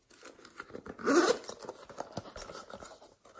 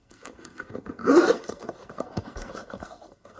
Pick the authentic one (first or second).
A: first